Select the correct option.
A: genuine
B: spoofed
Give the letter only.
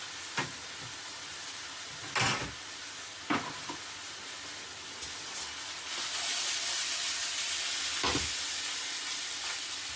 A